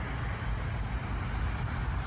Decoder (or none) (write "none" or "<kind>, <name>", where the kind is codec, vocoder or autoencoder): none